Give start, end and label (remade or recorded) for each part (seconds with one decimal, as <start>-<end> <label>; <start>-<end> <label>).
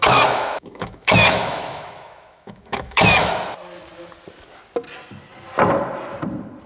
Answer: 0.0-3.3 remade; 3.3-6.7 recorded